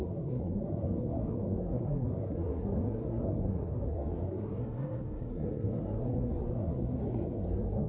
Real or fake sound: fake